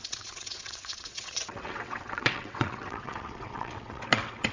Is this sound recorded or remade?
remade